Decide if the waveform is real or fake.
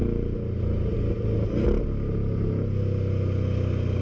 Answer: real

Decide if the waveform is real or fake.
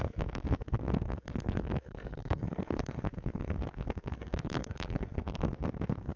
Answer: fake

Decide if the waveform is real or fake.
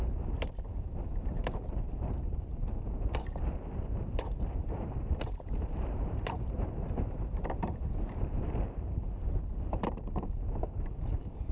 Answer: fake